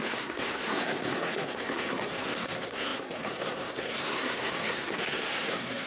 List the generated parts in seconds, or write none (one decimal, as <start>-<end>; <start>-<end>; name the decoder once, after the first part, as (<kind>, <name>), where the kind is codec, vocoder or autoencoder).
0.0-5.9 (codec, SNAC)